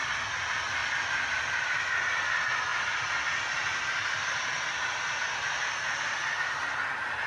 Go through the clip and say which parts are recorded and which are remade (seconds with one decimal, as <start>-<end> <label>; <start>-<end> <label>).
0.0-7.3 recorded